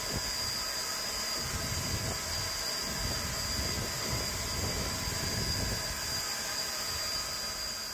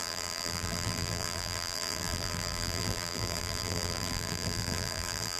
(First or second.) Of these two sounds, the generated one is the second